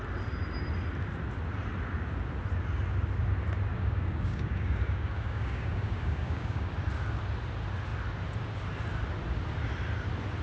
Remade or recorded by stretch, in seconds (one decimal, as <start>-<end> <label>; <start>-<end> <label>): 0.0-3.7 recorded; 3.7-6.7 remade; 6.7-10.4 recorded